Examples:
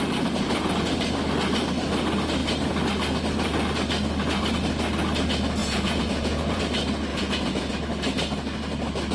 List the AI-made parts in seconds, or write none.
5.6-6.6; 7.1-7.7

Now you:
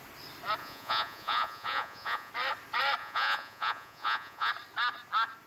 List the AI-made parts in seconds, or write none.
0.6-2.3; 3.0-4.5

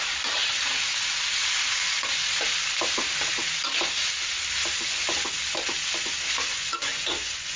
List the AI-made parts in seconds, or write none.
6.5-7.6

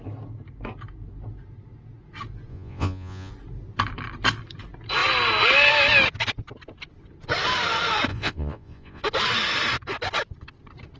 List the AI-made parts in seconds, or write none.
2.5-3.3; 8.1-9.0